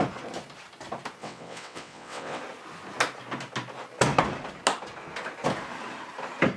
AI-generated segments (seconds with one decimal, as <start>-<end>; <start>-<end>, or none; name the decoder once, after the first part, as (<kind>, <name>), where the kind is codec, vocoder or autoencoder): 1.2-2.4 (vocoder, WaveNeXt)